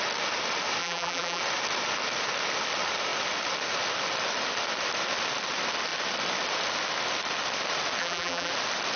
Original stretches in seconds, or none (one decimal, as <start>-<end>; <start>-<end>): 0.0-0.8; 1.4-8.0; 8.5-9.0